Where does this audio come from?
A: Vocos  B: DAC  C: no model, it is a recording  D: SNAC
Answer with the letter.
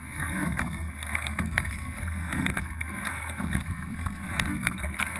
D